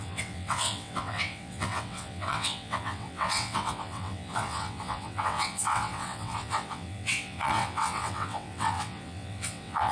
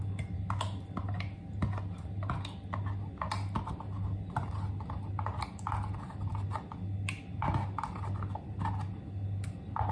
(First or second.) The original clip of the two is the second